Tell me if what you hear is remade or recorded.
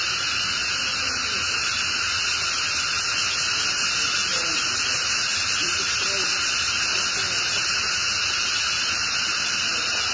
recorded